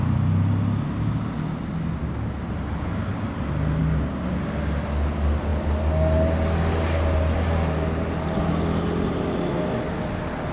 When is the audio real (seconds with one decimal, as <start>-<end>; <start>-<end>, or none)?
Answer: 0.0-10.5